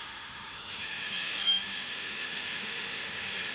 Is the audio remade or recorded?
remade